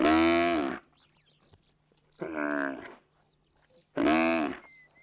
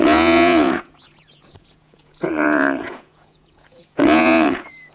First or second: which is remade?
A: second